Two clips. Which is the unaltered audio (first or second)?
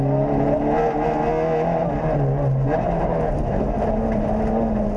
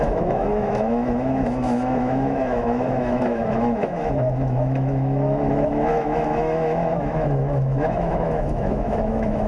first